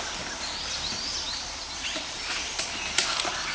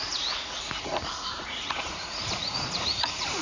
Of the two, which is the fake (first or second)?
second